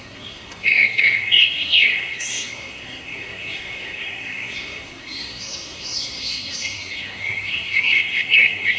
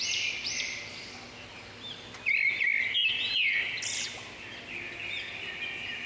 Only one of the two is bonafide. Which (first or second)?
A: second